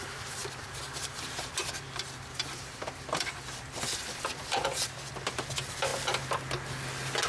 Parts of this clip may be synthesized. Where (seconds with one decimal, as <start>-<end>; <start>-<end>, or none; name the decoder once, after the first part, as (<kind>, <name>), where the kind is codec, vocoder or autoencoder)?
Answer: 0.0-5.9 (vocoder, BigVGAN v2)